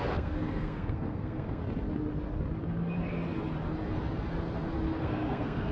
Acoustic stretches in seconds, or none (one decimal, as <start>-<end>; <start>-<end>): 1.6-5.0